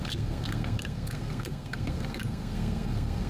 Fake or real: fake